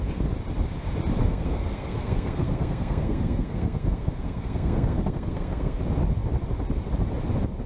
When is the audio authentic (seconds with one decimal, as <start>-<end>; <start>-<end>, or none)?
0.0-1.2; 5.8-7.7